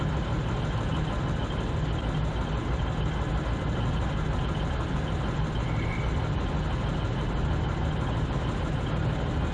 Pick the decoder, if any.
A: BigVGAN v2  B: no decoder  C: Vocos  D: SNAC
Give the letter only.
B